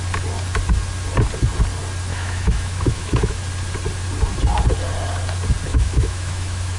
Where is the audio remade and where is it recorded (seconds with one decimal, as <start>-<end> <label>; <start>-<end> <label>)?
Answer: 0.0-2.1 recorded; 2.1-3.4 remade; 3.4-5.7 recorded; 5.7-6.8 remade